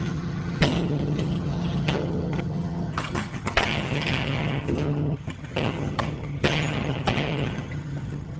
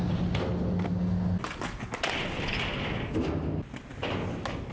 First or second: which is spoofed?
first